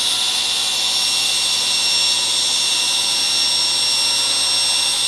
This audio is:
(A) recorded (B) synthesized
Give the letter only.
A